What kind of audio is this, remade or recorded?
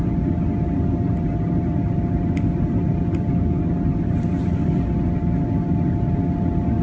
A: recorded